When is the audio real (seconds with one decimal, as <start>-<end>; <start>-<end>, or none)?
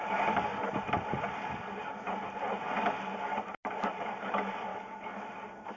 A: 0.0-4.7; 5.3-5.8